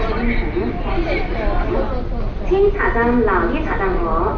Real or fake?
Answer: real